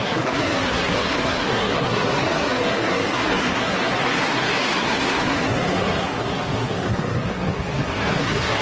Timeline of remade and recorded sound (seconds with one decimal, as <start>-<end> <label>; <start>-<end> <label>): 0.0-8.6 remade